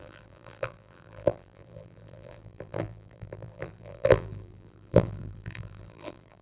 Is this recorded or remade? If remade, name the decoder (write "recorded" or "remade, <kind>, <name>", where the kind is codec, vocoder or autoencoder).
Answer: remade, vocoder, BigVGAN v2